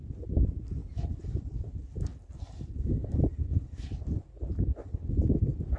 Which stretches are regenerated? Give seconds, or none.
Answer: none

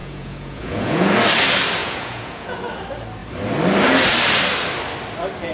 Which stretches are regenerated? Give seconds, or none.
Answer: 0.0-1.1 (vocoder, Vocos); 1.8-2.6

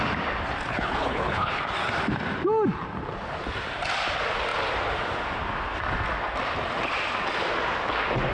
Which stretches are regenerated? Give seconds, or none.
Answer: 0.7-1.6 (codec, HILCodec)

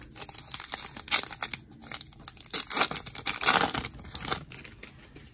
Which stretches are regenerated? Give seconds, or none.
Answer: none

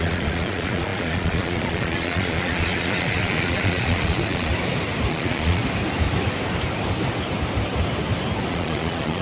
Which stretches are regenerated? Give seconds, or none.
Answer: 0.0-4.5 (vocoder, Vocos); 5.1-5.6; 8.5-9.2

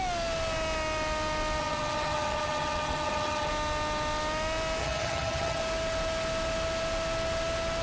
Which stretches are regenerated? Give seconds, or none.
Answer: 1.6-3.5 (vocoder, HiFi-GAN); 4.8-5.6